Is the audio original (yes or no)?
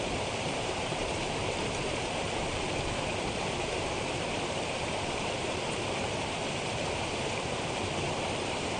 no